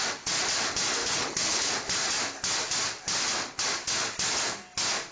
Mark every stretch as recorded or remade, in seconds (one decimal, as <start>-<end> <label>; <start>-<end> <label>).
0.0-1.0 recorded; 1.0-1.7 remade; 1.7-5.1 recorded